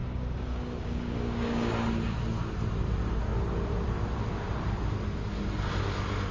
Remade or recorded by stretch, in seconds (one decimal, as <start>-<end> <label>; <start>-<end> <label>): 0.0-1.7 remade; 1.7-6.3 recorded